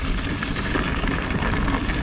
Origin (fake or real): real